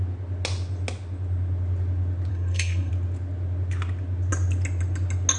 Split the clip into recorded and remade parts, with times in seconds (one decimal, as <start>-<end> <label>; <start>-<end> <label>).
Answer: 0.0-2.3 recorded; 2.3-2.9 remade; 2.9-5.4 recorded